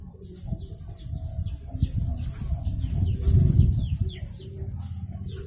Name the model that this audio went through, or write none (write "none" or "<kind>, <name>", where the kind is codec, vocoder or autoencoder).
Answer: none